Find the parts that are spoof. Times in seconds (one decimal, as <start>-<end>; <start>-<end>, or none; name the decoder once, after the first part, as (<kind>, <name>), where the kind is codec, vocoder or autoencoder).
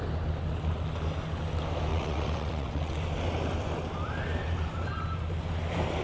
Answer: 1.9-3.0 (vocoder, WaveNeXt)